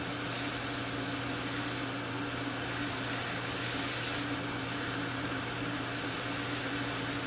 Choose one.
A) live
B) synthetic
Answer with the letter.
A